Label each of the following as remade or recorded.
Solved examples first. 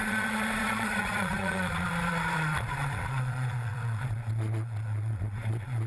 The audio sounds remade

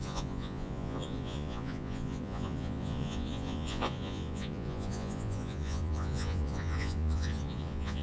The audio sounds remade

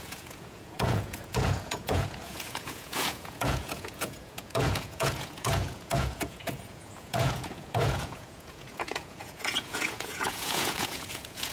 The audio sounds remade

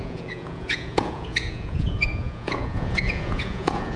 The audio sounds remade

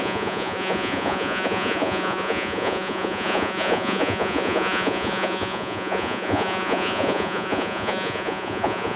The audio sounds remade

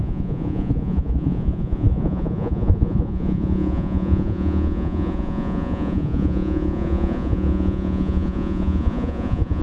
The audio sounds remade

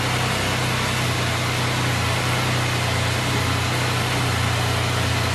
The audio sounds recorded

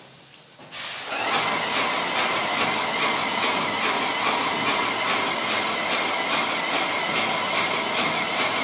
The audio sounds recorded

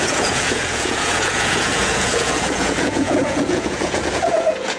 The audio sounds remade